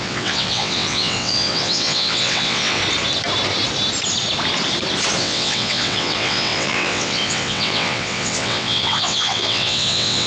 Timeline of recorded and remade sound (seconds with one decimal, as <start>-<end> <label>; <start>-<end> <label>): 0.0-2.8 remade; 2.8-5.2 recorded; 5.2-10.3 remade